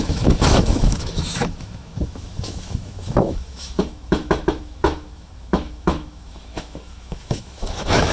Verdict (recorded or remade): remade